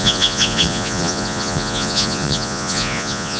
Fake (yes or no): yes